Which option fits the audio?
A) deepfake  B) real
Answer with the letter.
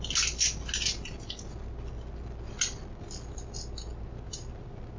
B